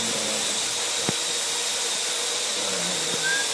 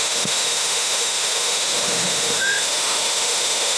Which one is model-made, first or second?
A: second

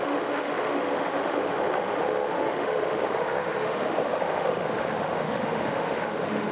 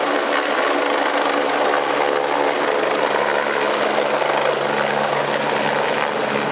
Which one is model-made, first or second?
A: first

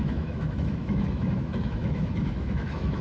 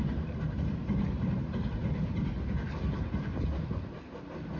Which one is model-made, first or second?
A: first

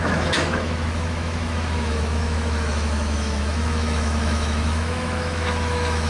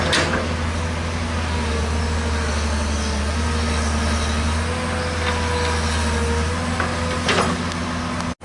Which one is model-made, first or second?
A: first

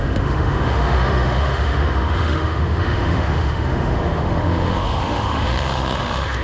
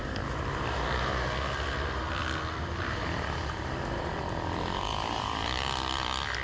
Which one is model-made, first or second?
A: first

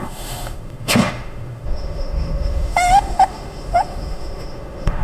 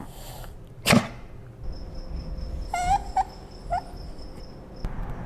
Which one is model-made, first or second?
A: first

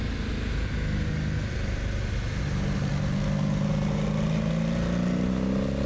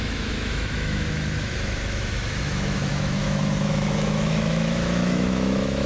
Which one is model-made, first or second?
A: second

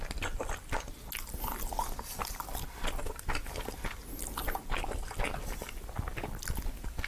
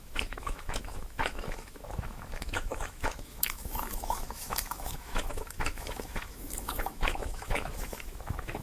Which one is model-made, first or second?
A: second